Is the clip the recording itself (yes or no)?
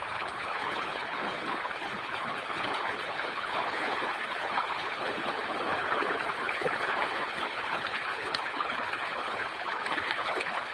no